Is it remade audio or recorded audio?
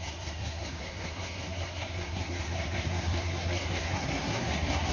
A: remade